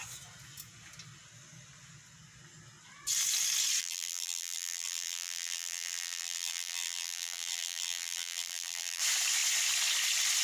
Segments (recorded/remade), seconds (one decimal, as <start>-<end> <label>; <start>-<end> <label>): 0.0-3.8 recorded; 3.8-9.0 remade; 9.0-10.4 recorded